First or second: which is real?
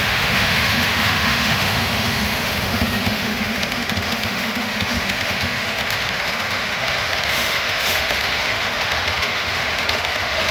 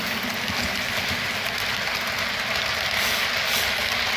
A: second